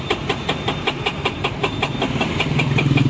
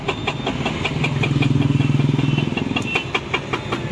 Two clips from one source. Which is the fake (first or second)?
first